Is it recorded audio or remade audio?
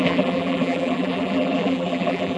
remade